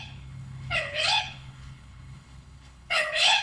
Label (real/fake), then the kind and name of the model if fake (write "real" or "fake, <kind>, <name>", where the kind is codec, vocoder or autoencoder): fake, codec, HILCodec